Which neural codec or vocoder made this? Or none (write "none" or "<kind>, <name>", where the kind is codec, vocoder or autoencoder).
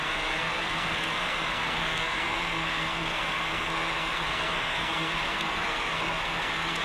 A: codec, SNAC